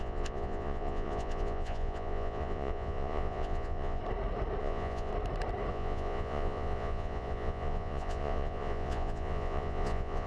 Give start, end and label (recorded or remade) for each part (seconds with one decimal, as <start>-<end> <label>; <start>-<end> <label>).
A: 0.0-4.0 remade; 4.0-4.6 recorded; 4.6-5.1 remade; 5.1-5.7 recorded; 5.7-10.3 remade